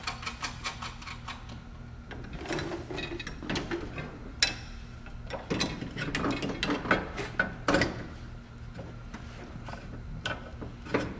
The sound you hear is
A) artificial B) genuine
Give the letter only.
B